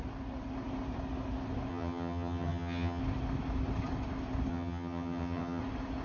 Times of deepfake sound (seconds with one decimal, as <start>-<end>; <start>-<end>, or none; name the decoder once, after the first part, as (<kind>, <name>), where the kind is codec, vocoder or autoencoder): 1.7-3.0 (vocoder, HiFi-GAN); 4.5-5.6

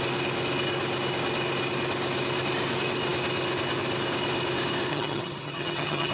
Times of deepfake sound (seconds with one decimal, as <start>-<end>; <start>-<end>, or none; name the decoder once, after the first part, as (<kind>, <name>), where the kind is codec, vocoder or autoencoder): 4.9-6.1 (vocoder, HiFi-GAN)

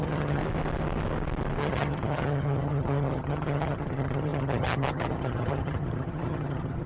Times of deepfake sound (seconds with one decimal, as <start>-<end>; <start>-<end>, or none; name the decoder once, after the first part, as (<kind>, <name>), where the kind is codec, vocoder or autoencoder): 0.0-0.4 (vocoder, HiFi-GAN); 1.6-6.9

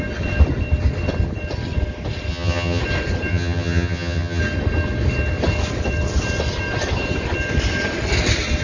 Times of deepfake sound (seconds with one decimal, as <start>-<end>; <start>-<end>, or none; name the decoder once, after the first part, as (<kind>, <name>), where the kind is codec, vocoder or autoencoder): 2.3-2.8 (vocoder, HiFi-GAN); 3.3-4.4